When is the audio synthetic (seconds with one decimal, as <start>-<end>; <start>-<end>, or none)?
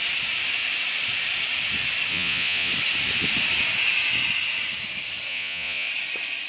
2.1-2.7; 5.3-5.9